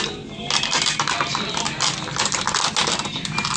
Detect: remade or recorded recorded